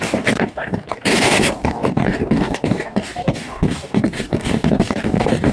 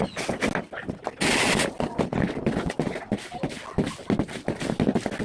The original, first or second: second